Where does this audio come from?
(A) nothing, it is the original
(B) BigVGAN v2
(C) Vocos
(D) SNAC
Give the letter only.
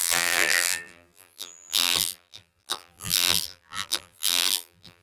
B